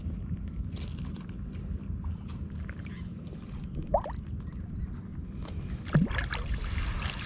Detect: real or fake real